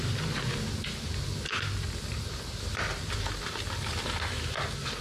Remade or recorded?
recorded